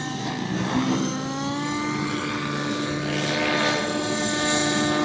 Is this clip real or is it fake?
real